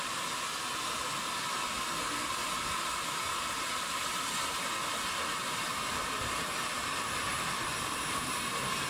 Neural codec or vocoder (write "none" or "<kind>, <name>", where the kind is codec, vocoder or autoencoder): none